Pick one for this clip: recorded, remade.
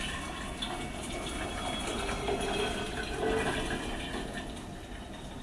recorded